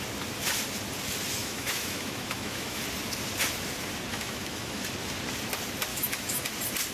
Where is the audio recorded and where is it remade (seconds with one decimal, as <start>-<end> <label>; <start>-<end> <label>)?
0.0-1.4 recorded; 1.4-2.8 remade; 2.8-4.1 recorded; 4.1-4.8 remade; 4.8-5.9 recorded; 5.9-6.5 remade; 6.5-6.9 recorded